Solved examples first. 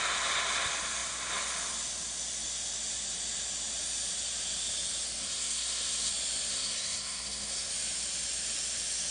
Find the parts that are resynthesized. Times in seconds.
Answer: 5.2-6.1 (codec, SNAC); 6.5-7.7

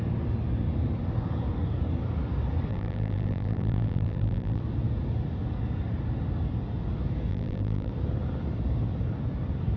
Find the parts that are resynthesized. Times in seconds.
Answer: 2.7-4.6 (vocoder, BigVGAN v2); 7.3-7.9

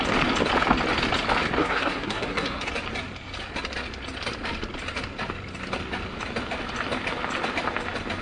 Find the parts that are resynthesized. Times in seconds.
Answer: 1.6-2.7 (codec, SNAC)

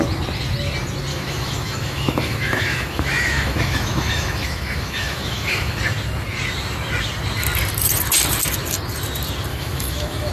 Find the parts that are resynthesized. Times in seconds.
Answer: 1.1-5.8 (autoencoder, DAC-VAE); 9.5-10.3

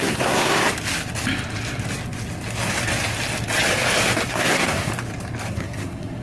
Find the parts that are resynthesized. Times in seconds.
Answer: 0.0-0.6 (codec, SNAC); 4.3-4.9; 5.5-6.2